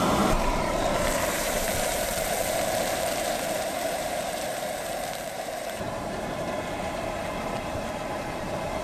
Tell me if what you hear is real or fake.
fake